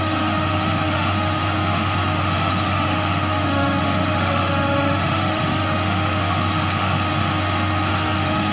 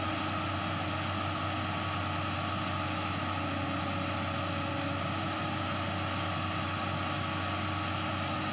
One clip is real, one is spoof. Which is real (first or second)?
second